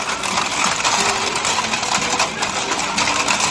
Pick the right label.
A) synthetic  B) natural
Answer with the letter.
B